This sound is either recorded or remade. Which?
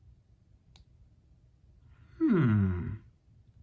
recorded